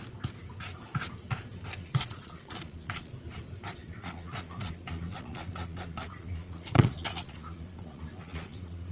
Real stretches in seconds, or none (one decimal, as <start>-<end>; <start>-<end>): 0.0-1.8; 3.1-3.8